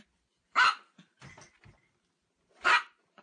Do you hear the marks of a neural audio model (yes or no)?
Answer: no